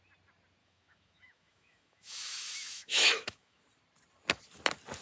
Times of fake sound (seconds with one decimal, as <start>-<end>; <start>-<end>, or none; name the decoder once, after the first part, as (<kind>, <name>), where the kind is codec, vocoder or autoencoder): 0.6-3.6 (autoencoder, DAC-VAE)